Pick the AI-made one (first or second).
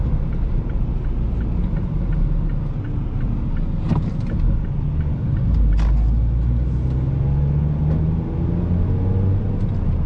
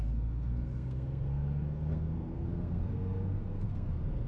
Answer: second